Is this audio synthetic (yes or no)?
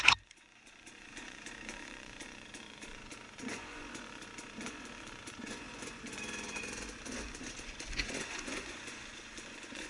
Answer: yes